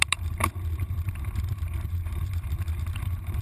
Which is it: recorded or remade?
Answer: remade